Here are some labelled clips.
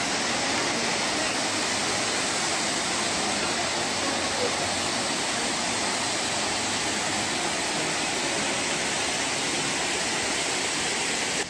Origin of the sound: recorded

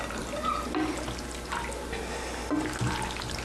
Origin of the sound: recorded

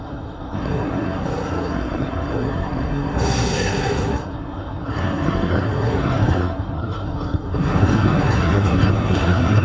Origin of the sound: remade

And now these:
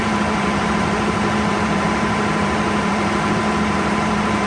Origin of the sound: remade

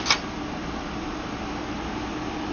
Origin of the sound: recorded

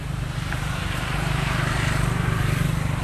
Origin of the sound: remade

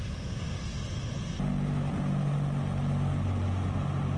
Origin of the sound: recorded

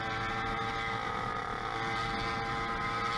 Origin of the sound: recorded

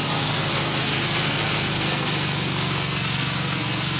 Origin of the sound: remade